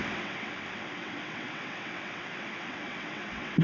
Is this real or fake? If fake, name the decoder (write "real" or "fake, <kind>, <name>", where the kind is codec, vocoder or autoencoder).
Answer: fake, vocoder, WaveNeXt